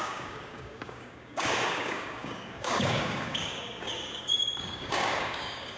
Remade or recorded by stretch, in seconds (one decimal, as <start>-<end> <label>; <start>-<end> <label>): 0.0-5.8 remade